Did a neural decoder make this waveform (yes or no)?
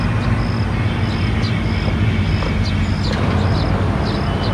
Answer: no